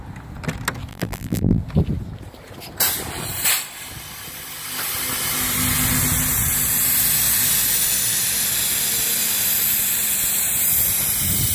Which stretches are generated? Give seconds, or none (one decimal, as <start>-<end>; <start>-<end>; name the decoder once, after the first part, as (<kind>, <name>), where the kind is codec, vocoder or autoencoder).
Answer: 0.9-1.6 (vocoder, BigVGAN v2)